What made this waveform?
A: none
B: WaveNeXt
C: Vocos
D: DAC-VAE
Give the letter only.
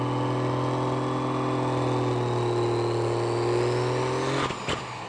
A